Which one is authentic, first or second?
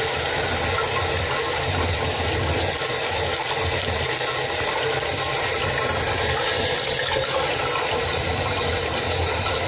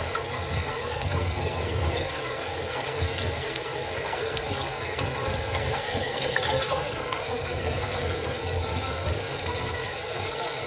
first